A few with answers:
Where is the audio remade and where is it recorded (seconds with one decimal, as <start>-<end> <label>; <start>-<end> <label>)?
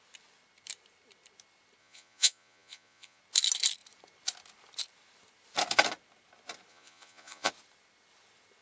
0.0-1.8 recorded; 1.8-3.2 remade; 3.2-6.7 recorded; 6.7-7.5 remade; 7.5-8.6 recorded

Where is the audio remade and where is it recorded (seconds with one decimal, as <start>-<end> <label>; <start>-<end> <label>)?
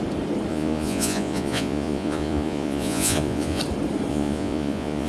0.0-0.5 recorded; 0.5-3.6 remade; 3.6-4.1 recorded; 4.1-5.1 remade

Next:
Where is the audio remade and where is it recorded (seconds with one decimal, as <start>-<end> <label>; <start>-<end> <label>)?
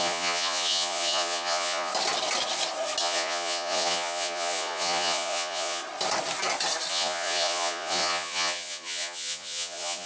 0.0-1.9 remade; 1.9-3.0 recorded; 3.0-5.8 remade; 5.8-6.9 recorded; 6.9-10.1 remade